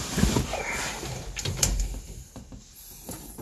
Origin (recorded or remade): remade